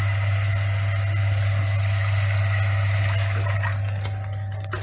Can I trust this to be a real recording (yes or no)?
yes